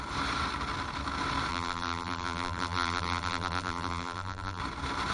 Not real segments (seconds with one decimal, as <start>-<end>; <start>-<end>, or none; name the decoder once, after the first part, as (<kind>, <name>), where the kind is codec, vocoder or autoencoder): 1.5-4.6 (vocoder, BigVGAN v2)